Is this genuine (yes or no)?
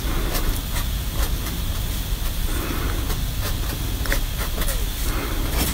yes